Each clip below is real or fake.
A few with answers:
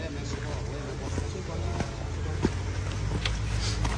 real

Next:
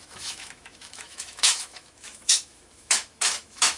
fake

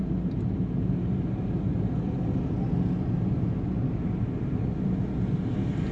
real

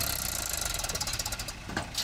real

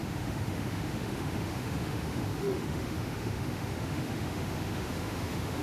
fake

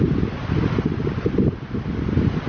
real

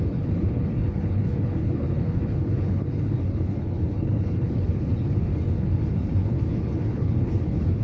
fake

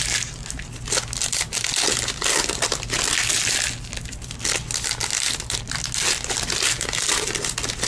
real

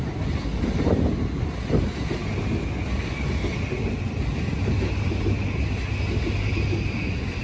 real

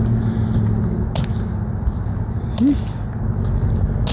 real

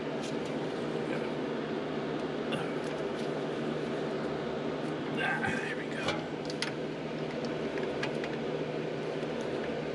real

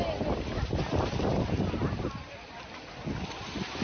real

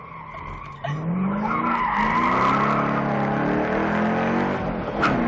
real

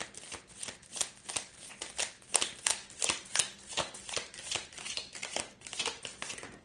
real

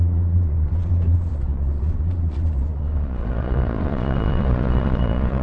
fake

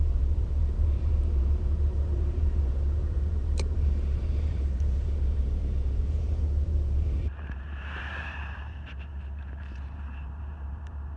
fake